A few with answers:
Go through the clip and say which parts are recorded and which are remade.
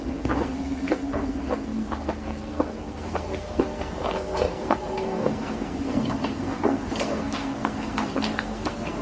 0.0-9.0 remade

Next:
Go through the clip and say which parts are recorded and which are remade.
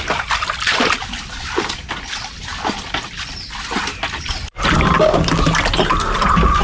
0.0-6.6 recorded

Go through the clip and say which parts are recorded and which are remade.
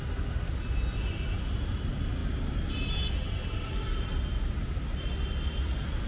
0.0-2.2 recorded; 2.2-2.9 remade; 2.9-6.1 recorded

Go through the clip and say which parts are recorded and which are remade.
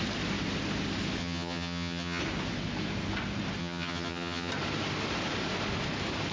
0.0-1.2 recorded; 1.2-2.2 remade; 2.2-3.6 recorded; 3.6-4.5 remade; 4.5-6.3 recorded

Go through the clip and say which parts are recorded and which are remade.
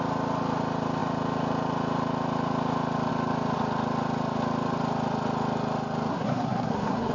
0.0-6.1 recorded; 6.1-7.1 remade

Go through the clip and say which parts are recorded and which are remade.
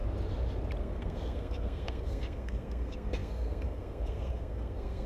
0.0-0.8 recorded; 0.8-5.1 remade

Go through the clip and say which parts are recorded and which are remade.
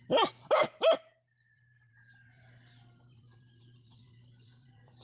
0.0-5.0 remade